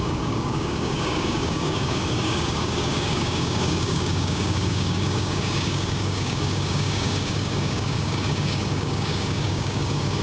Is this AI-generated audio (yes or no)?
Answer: yes